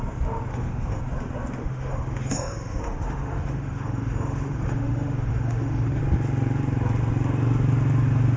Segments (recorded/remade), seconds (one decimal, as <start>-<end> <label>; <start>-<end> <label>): 0.0-0.5 recorded; 0.5-1.0 remade; 1.0-1.6 recorded; 1.6-6.0 remade; 6.0-8.4 recorded